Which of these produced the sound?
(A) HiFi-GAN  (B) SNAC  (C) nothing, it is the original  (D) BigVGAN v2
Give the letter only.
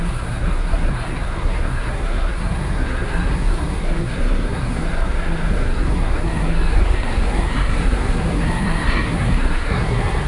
B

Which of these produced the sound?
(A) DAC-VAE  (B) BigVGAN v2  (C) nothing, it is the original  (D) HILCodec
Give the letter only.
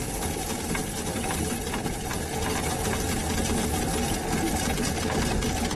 C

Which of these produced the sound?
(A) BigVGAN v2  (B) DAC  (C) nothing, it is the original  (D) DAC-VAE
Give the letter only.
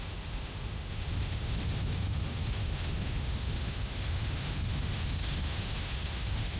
D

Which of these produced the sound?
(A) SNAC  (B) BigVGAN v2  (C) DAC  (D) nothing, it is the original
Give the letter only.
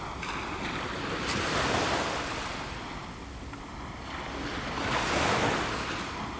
D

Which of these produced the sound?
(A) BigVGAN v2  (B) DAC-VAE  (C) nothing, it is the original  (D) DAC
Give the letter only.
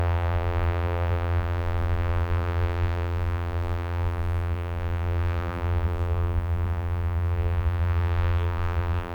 A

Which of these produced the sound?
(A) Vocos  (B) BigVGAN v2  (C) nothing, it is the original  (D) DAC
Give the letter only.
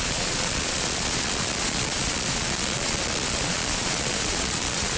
A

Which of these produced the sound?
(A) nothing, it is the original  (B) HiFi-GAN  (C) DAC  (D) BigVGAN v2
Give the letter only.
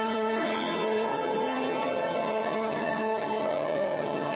B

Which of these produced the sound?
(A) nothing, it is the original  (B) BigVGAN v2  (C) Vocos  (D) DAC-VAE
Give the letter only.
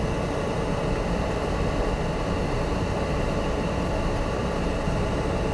A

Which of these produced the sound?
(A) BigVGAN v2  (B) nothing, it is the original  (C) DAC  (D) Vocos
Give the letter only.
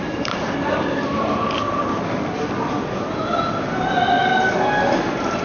B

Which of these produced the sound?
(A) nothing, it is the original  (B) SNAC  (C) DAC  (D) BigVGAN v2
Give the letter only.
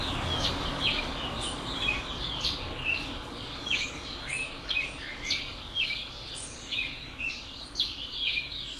C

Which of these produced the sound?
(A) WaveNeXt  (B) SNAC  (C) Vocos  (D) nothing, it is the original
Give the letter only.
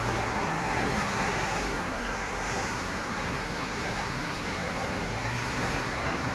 B